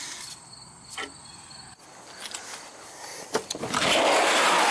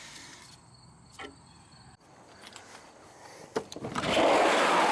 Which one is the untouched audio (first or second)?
first